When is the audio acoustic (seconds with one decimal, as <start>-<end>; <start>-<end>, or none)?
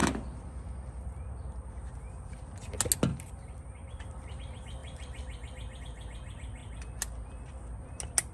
0.0-3.1; 4.0-8.3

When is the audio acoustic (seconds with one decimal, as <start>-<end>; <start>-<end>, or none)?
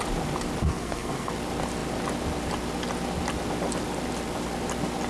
0.0-0.6; 1.3-5.1